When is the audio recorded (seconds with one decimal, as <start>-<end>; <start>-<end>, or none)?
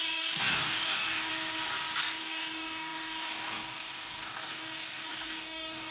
1.3-2.2